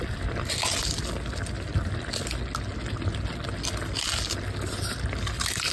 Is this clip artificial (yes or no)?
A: no